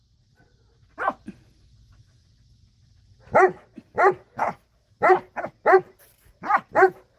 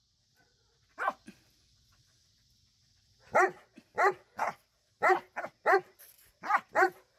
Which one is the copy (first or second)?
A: second